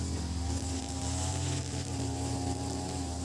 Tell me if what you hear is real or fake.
real